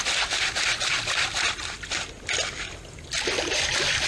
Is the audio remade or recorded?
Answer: recorded